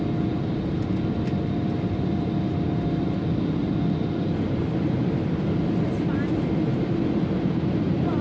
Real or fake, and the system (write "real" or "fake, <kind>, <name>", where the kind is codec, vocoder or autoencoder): real